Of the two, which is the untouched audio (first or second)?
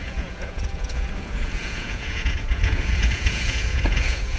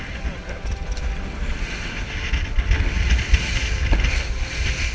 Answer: second